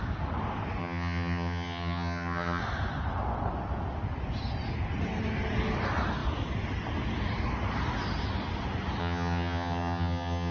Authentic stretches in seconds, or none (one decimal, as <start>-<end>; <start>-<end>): 0.0-0.8; 2.6-9.0